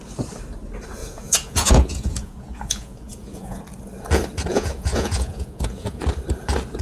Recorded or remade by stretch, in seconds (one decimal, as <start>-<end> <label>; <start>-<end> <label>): 0.0-1.0 recorded; 1.0-3.6 remade; 3.6-4.5 recorded; 4.5-6.0 remade; 6.0-6.8 recorded